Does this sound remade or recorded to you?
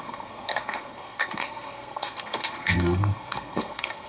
remade